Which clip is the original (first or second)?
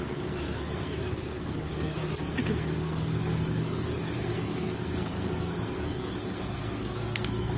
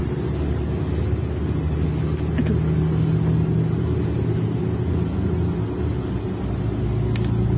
second